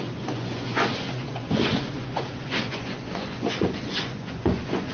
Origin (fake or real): fake